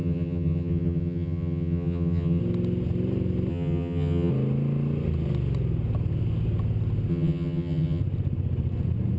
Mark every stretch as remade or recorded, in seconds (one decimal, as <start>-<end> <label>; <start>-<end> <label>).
0.0-2.4 remade; 2.4-3.5 recorded; 3.5-4.3 remade; 4.3-7.1 recorded; 7.1-8.0 remade; 8.0-9.2 recorded